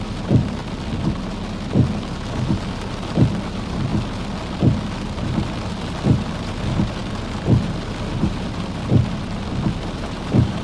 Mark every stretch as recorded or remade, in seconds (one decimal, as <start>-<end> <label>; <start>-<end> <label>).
0.0-0.6 remade; 0.6-2.7 recorded; 2.7-3.9 remade; 3.9-6.3 recorded; 6.3-10.6 remade